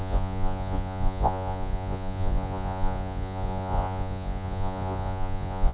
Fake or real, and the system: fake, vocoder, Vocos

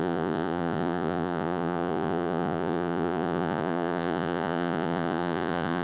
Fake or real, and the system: fake, vocoder, Vocos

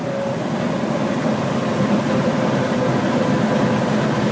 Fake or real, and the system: real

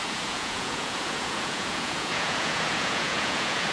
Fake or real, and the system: fake, vocoder, Vocos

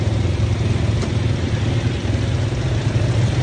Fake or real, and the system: real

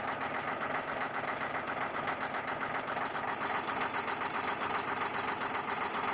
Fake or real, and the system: real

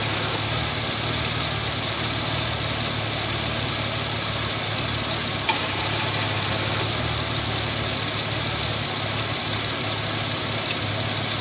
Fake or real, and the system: real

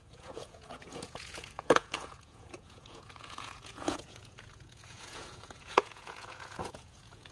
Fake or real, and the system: fake, vocoder, Vocos